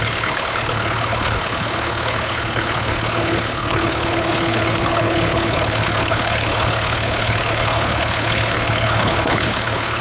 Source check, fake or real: fake